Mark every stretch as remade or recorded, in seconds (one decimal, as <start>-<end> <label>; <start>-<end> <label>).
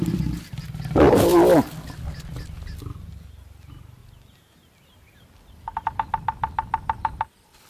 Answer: 0.0-1.3 remade; 1.3-3.4 recorded; 3.4-4.0 remade; 4.0-7.3 recorded; 7.3-7.7 remade